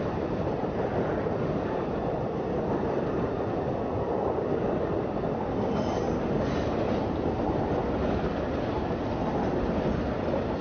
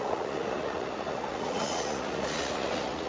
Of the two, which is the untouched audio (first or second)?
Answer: first